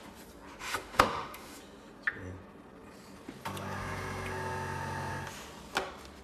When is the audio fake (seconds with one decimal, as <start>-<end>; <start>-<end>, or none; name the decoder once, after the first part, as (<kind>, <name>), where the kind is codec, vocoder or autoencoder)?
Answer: 0.6-1.6 (autoencoder, DAC-VAE)